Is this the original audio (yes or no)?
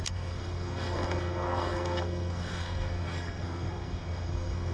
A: no